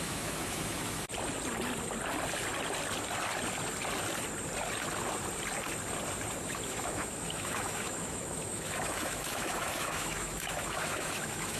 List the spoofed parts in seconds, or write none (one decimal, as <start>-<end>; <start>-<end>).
0.0-1.1; 6.4-11.6